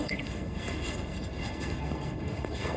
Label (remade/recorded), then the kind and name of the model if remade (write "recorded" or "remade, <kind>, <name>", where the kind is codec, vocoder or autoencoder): remade, codec, SNAC